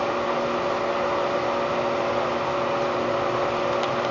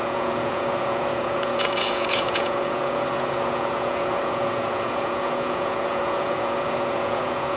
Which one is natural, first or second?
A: first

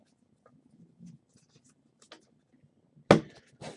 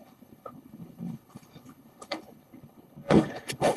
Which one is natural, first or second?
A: first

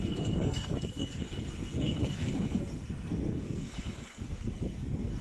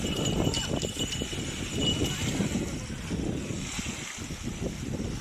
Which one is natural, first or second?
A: second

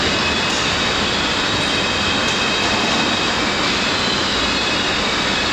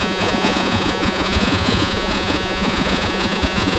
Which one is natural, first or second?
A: first